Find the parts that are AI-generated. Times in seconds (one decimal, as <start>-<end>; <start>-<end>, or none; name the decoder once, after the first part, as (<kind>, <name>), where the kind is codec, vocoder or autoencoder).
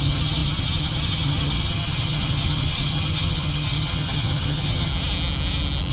0.0-4.9 (vocoder, HiFi-GAN)